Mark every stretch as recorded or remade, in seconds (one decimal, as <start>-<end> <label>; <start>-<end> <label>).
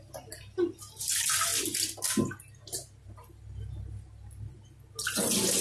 0.0-5.6 recorded